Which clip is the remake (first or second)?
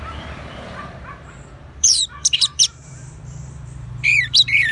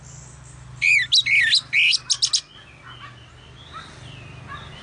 first